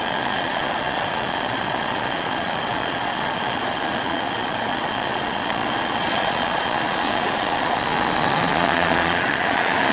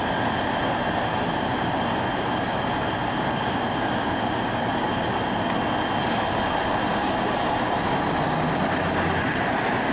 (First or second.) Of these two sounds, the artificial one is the first